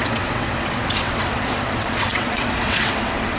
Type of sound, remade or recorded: remade